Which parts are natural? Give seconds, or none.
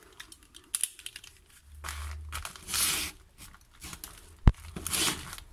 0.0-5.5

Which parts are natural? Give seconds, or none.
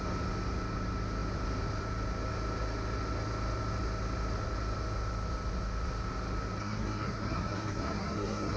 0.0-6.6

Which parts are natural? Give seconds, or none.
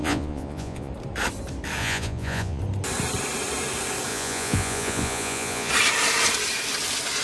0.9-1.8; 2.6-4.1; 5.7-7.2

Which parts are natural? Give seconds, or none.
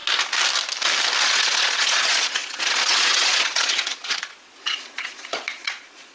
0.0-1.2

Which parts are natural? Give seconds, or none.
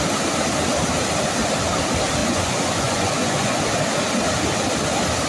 0.0-2.2; 3.6-5.3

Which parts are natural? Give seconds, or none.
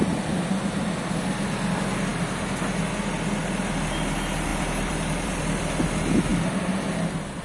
0.0-4.5; 5.8-6.3; 7.0-7.4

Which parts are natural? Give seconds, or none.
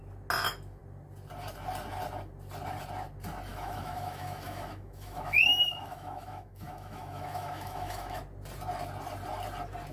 0.0-3.5; 8.2-9.9